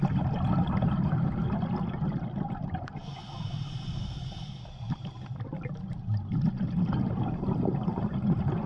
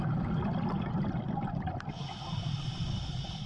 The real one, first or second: first